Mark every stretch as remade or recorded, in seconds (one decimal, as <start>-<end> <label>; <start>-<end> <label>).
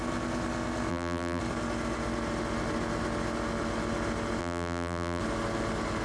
0.0-0.9 recorded; 0.9-1.4 remade; 1.4-4.4 recorded; 4.4-5.2 remade; 5.2-6.0 recorded